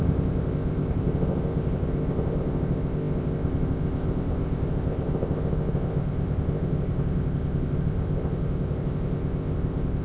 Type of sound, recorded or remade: remade